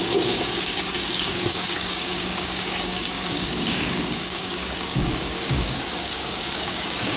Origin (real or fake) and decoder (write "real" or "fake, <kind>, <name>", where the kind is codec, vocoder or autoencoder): fake, codec, DAC